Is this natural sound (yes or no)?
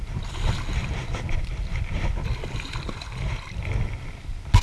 yes